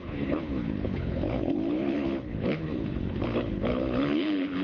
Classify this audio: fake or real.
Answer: fake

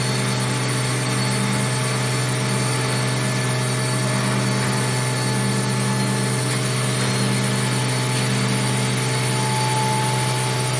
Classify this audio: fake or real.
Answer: real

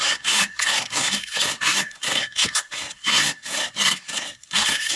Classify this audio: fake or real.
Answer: fake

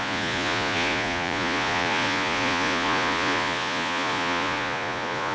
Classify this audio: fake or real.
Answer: fake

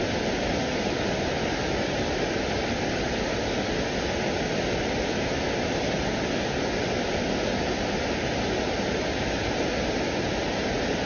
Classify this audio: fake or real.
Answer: real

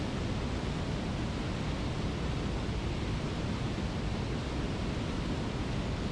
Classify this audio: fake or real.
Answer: real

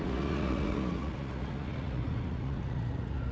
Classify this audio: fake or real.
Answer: fake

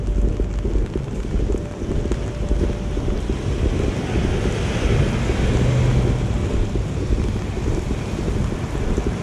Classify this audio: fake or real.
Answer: real